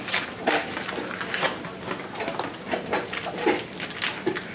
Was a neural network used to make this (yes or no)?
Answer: no